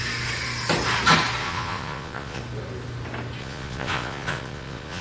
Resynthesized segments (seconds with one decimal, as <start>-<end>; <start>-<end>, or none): 1.4-2.4; 3.4-5.0